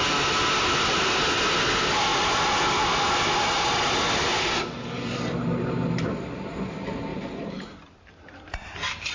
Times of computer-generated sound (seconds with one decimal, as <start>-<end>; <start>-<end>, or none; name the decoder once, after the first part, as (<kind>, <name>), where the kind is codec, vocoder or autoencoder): 7.1-7.7 (vocoder, BigVGAN v2)